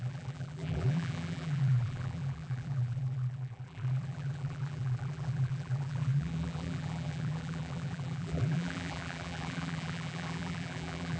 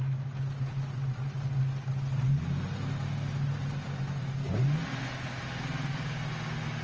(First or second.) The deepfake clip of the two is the first